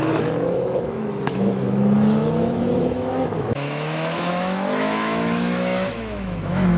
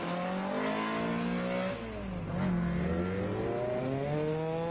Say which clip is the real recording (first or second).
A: second